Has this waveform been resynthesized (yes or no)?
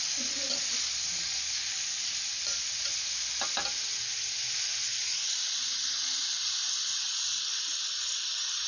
no